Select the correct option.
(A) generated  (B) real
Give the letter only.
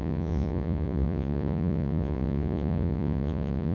A